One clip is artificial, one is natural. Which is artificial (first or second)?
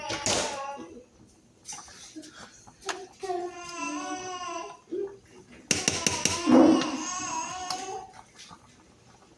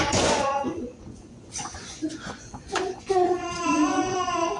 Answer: second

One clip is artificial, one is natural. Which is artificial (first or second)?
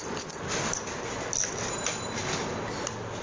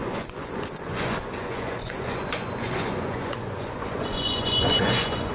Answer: second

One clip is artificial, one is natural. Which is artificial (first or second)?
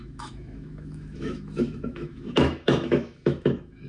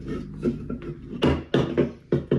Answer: first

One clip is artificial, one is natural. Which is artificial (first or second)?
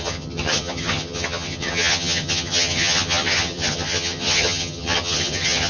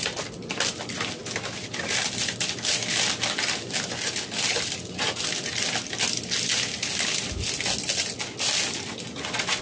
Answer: first